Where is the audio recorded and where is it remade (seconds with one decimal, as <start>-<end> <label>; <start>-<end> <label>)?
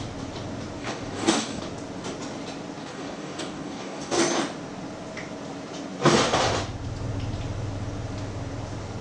0.0-0.8 recorded; 0.8-1.6 remade; 1.6-2.8 recorded; 2.8-4.2 remade; 4.2-9.0 recorded